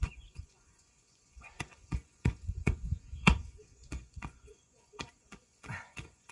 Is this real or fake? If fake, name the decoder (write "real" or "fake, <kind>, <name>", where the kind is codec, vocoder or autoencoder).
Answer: fake, vocoder, Vocos